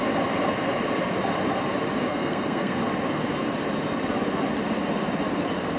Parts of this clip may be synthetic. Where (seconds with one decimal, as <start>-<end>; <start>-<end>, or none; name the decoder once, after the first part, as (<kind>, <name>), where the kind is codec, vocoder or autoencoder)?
2.1-2.8 (codec, SNAC)